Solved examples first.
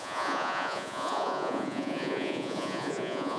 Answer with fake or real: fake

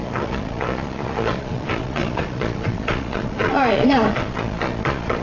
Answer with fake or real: fake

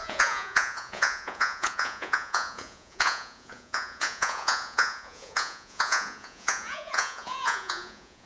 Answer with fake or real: fake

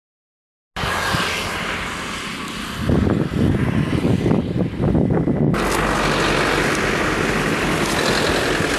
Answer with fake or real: real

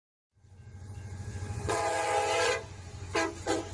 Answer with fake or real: fake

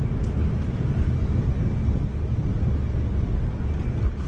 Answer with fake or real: real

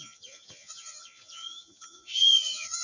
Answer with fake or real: fake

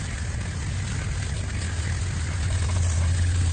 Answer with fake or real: real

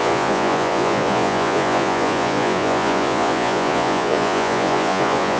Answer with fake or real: fake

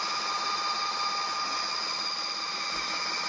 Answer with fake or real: real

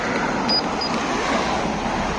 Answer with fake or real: real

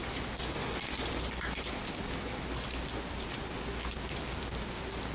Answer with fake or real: real